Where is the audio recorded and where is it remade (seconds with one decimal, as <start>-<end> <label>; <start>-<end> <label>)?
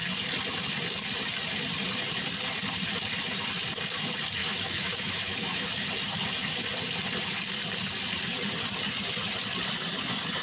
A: 0.0-4.4 recorded; 4.4-5.9 remade; 5.9-10.4 recorded